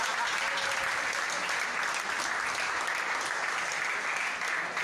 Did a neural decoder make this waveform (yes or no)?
no